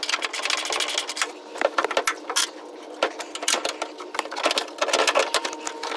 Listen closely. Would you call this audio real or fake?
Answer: real